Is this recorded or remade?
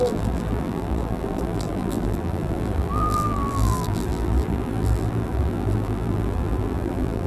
remade